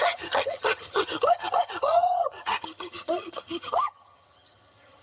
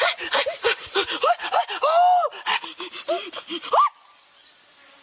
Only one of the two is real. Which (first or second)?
second